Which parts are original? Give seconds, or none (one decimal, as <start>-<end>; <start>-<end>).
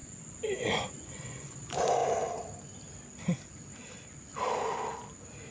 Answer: 1.6-5.5